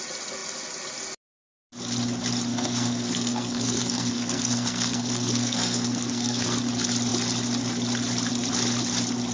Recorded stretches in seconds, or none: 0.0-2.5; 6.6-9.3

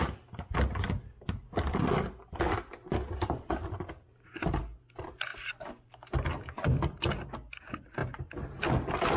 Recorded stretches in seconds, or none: 0.0-9.2

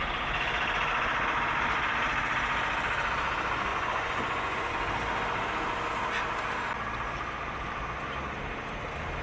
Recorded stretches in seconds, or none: 0.0-3.7; 4.7-9.2